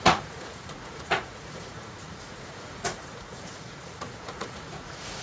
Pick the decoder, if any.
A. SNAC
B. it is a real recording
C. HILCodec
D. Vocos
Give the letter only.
D